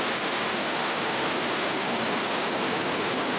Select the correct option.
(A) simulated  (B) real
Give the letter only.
A